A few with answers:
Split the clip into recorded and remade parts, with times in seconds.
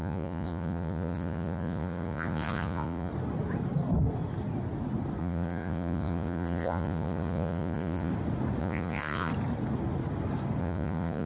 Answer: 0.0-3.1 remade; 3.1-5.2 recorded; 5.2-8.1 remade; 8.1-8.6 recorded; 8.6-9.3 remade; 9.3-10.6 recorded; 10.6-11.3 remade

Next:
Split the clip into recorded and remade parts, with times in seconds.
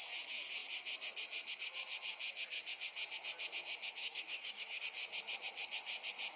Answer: 0.0-4.0 recorded; 4.0-4.8 remade; 4.8-6.4 recorded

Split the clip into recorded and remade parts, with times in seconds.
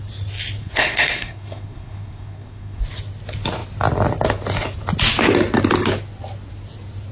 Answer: 0.0-0.6 recorded; 0.6-2.8 remade; 2.8-7.1 recorded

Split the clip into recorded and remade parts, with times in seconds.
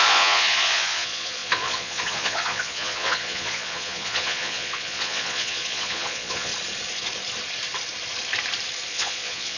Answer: 0.0-6.5 remade; 6.5-8.9 recorded; 8.9-9.6 remade